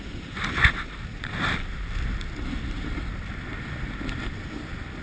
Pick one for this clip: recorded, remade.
recorded